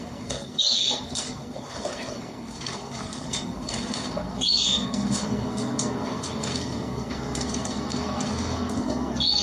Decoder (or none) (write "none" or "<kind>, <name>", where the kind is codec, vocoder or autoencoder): codec, SNAC